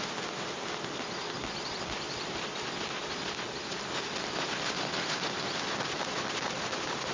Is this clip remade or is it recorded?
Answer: remade